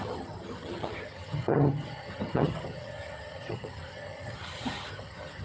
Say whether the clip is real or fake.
fake